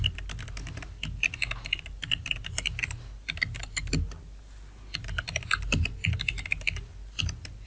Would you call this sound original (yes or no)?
yes